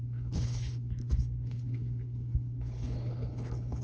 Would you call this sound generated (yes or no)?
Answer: yes